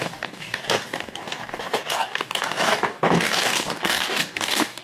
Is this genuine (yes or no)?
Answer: no